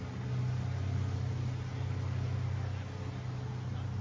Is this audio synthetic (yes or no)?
no